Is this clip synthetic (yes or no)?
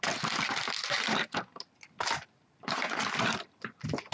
no